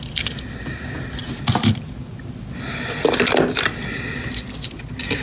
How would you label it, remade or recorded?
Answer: recorded